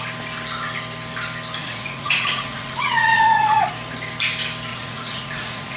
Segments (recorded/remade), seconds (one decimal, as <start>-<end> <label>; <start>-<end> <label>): 0.0-1.6 recorded; 1.6-3.7 remade; 3.7-4.7 recorded; 4.7-5.8 remade